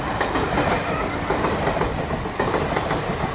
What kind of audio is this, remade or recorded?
recorded